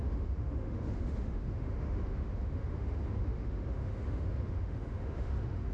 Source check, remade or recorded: remade